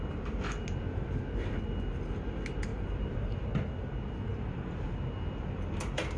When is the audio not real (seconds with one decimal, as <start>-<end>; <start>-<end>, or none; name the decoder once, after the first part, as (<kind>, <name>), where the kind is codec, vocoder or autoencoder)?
2.7-3.3 (vocoder, BigVGAN v2); 4.3-4.9